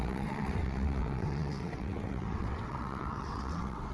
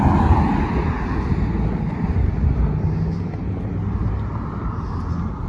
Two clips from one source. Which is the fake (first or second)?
first